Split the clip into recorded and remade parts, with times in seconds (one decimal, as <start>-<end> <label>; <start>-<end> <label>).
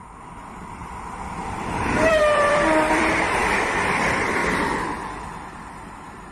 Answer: 0.0-3.4 remade; 3.4-4.0 recorded; 4.0-4.4 remade; 4.4-5.2 recorded; 5.2-6.3 remade